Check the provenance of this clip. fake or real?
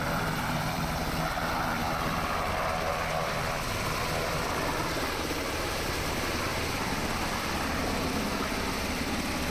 fake